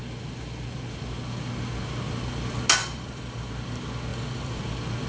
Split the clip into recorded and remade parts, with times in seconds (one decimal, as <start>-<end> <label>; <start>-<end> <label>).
0.0-2.8 recorded; 2.8-3.5 remade; 3.5-4.1 recorded; 4.1-4.6 remade; 4.6-5.1 recorded